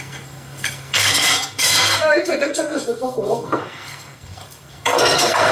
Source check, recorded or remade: remade